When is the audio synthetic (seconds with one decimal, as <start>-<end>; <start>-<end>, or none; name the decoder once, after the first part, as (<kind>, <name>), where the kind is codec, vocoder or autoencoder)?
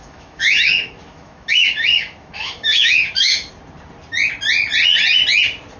0.0-3.5 (autoencoder, DAC-VAE)